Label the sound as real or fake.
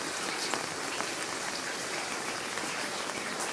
real